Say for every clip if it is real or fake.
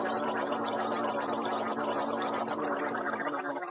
real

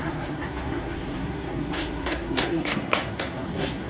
fake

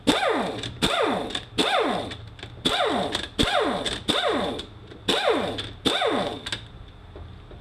real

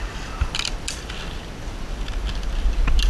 real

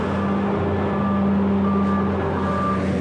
real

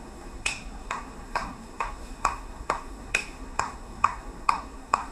fake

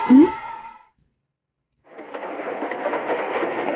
fake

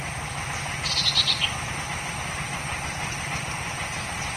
real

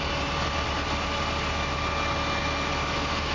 real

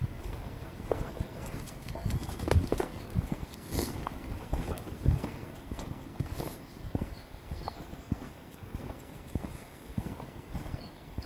fake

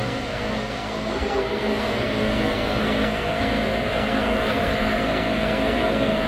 fake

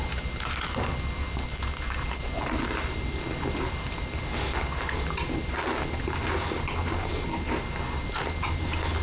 real